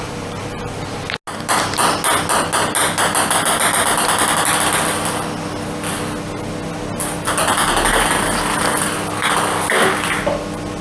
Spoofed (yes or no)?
no